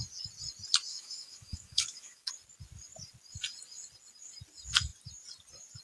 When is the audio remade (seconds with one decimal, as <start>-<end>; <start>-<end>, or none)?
0.9-2.3